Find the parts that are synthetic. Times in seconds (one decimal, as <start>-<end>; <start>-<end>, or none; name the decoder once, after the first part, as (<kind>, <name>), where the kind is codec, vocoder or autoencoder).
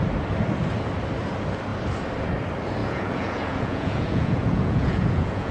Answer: 2.8-5.5 (vocoder, Vocos)